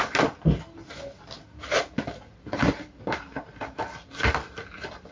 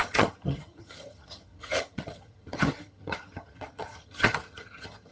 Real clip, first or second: first